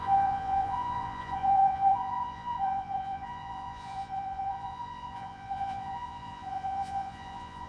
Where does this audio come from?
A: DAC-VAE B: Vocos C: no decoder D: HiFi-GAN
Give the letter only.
B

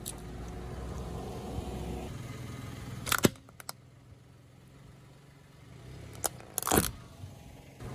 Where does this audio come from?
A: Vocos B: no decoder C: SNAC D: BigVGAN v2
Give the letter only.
B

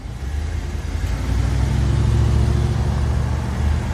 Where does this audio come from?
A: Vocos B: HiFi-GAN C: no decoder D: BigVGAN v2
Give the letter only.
C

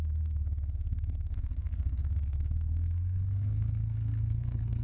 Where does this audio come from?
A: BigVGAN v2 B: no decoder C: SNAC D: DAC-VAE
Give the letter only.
C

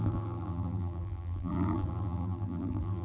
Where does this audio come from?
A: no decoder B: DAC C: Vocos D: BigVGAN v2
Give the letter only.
D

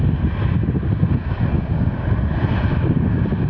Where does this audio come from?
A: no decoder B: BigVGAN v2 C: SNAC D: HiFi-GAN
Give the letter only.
A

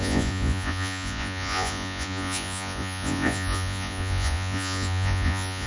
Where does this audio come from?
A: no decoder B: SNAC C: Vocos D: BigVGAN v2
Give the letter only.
C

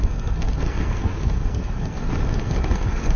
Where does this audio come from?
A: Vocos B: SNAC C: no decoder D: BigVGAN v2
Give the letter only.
B